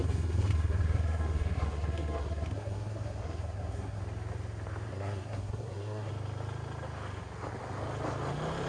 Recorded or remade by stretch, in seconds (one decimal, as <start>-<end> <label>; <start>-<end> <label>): 0.0-4.0 remade; 4.0-4.9 recorded; 4.9-6.1 remade; 6.1-8.7 recorded